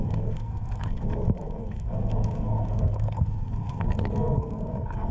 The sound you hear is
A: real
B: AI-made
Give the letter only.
B